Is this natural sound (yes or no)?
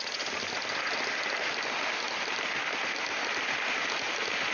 yes